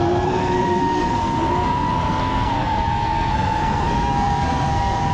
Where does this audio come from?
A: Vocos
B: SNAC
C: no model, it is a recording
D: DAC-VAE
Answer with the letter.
B